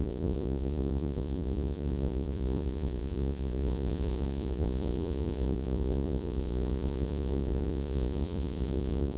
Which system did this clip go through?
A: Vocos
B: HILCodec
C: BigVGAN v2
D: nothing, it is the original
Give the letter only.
A